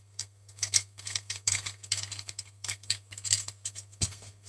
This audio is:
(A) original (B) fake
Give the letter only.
B